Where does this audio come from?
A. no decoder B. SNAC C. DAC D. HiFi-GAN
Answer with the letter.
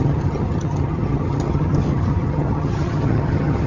D